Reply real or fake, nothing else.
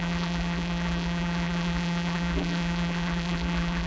fake